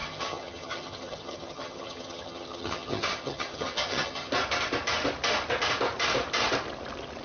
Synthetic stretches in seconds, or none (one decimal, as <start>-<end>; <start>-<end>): 0.0-4.3